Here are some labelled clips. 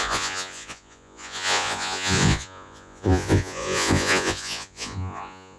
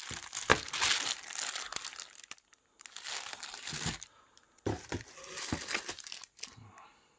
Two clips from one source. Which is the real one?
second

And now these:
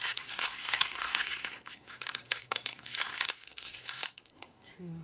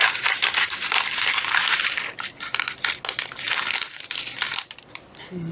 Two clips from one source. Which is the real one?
second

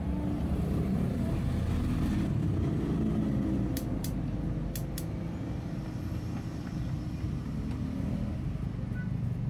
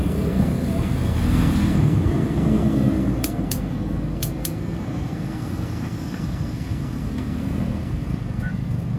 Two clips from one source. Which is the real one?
first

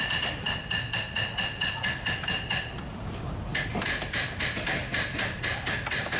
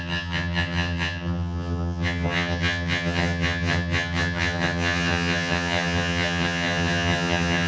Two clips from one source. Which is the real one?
first